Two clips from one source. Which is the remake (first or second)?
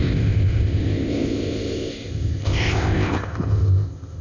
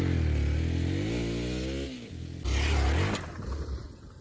first